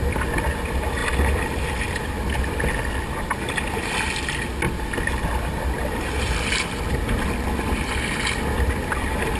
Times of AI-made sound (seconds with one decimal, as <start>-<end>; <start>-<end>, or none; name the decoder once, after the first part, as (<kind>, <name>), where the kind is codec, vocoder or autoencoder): none